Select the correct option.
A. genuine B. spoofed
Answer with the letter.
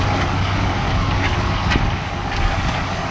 B